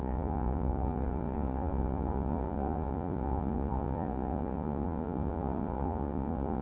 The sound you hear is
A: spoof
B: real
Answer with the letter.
A